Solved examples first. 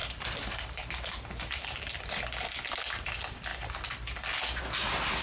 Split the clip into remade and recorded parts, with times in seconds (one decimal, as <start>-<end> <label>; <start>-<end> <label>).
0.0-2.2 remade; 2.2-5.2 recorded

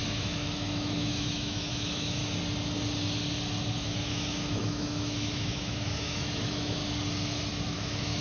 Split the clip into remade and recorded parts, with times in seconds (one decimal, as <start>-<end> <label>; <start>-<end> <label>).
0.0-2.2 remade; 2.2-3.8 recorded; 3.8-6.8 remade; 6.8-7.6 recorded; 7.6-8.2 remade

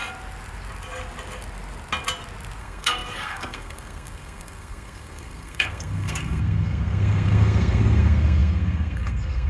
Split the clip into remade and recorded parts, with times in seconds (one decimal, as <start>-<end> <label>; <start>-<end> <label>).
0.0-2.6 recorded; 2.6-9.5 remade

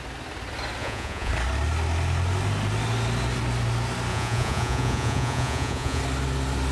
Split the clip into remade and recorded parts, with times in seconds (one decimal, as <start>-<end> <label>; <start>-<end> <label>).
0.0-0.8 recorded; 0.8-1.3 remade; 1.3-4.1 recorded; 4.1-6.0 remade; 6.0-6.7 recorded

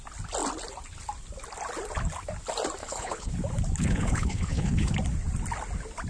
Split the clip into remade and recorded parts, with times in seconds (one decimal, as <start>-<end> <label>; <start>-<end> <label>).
0.0-2.8 recorded; 2.8-3.3 remade; 3.3-3.8 recorded; 3.8-4.9 remade; 4.9-6.1 recorded